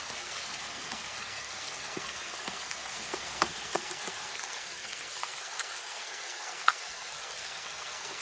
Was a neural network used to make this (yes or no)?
yes